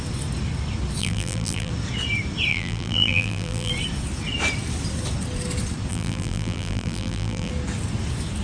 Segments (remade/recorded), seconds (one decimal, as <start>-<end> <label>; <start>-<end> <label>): 0.0-1.0 recorded; 1.0-1.7 remade; 1.7-2.5 recorded; 2.5-3.7 remade; 3.7-5.9 recorded; 5.9-7.5 remade; 7.5-8.4 recorded